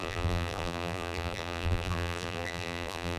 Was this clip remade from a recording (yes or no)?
yes